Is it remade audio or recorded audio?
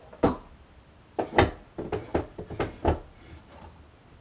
recorded